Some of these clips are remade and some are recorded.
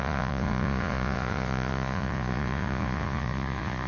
remade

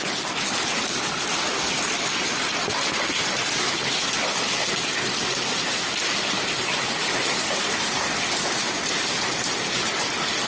recorded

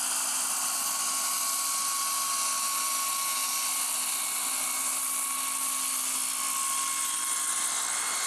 recorded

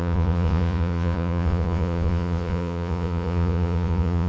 remade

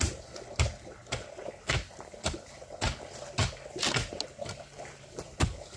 recorded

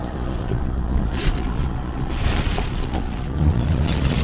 remade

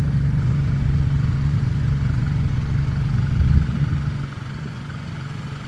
remade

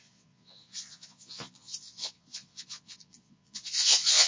remade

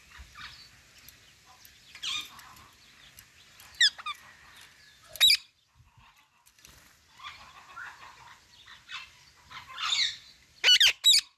recorded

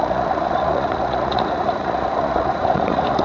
remade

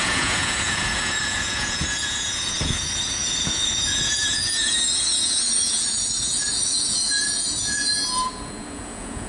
remade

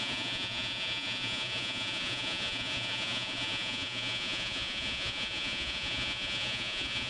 remade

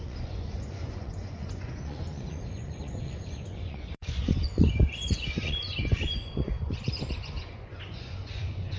remade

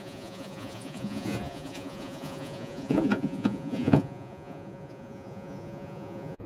remade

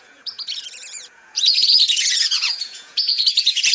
remade